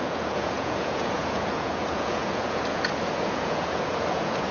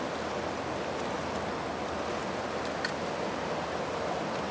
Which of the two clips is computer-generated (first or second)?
first